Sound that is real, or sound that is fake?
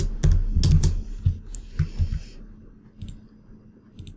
real